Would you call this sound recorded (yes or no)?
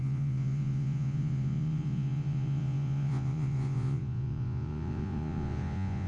no